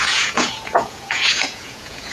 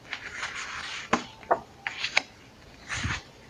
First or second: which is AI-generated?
first